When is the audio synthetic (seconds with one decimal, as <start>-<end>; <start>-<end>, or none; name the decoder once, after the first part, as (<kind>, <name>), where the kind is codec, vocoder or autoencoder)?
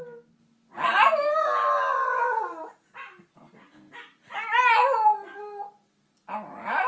none